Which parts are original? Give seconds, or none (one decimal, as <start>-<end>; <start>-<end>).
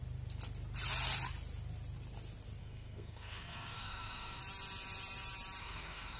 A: 0.0-2.6; 4.4-5.6